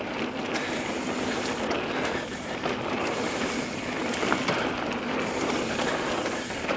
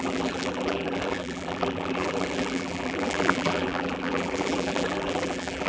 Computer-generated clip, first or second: second